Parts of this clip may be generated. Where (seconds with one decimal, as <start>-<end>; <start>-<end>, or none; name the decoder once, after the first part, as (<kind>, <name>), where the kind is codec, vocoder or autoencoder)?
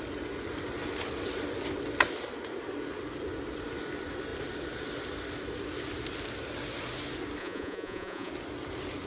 7.4-8.3 (vocoder, Vocos)